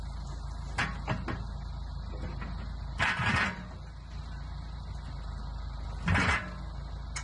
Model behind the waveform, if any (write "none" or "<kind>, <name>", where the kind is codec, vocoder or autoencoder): none